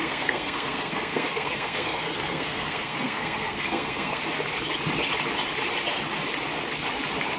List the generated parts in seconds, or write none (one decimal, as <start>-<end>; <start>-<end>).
0.0-4.2